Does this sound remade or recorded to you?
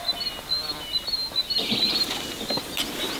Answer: recorded